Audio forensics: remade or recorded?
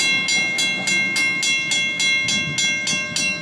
recorded